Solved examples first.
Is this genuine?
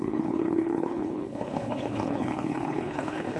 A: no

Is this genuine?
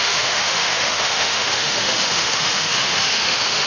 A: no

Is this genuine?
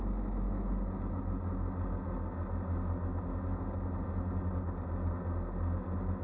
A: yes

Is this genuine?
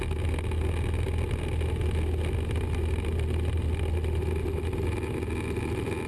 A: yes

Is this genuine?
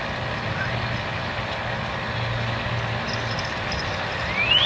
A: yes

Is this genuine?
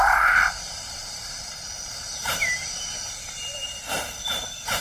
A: no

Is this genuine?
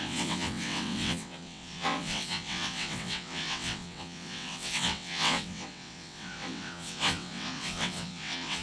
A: no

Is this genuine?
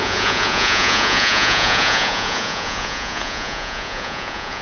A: no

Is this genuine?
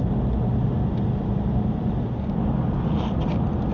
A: yes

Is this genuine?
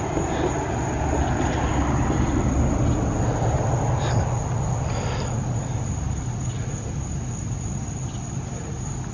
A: yes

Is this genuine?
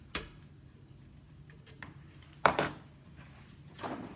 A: no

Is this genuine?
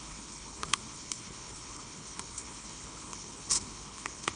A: no